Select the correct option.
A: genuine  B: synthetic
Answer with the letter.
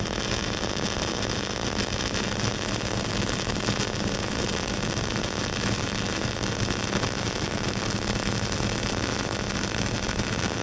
A